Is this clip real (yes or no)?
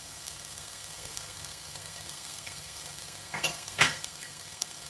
no